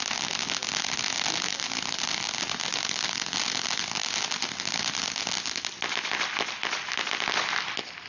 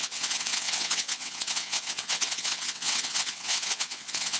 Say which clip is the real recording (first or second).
first